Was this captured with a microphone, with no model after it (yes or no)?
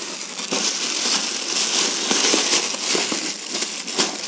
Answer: yes